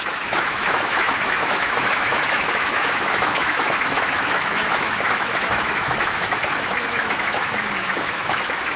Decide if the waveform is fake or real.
fake